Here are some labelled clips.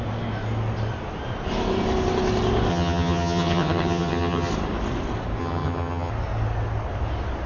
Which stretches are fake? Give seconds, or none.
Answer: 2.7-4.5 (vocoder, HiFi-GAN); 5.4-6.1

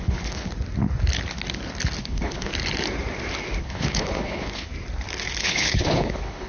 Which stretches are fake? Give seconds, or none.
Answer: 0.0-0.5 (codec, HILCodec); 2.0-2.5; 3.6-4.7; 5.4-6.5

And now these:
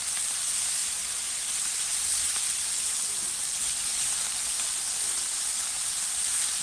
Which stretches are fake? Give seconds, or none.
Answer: 0.8-1.4 (vocoder, BigVGAN v2); 1.8-2.3

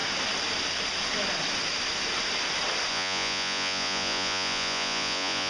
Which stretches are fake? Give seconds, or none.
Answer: 2.9-5.5 (vocoder, Vocos)

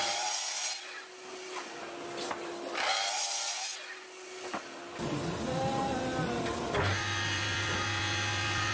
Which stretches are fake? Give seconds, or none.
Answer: none